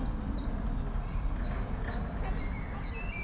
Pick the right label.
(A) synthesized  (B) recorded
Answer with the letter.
B